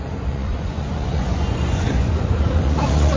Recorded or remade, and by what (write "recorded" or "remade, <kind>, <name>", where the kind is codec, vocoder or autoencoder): remade, vocoder, Vocos